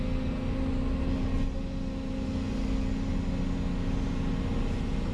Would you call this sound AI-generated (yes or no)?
no